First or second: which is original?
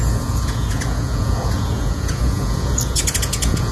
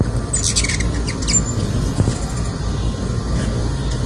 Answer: second